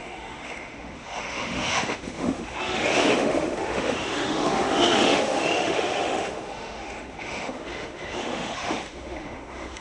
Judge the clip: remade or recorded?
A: remade